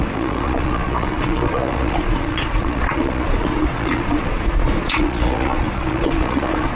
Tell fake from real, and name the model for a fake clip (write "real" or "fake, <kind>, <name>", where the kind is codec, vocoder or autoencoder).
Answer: fake, vocoder, Vocos